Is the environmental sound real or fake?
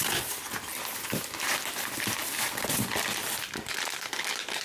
fake